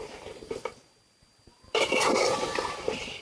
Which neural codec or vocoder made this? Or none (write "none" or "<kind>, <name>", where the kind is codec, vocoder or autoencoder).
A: vocoder, BigVGAN v2